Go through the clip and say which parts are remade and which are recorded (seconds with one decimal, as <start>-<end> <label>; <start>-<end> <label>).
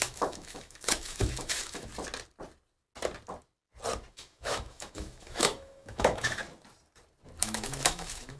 0.0-1.9 remade; 1.9-4.1 recorded; 4.1-6.4 remade; 6.4-7.4 recorded; 7.4-8.4 remade